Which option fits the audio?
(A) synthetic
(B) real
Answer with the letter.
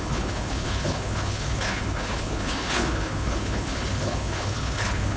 A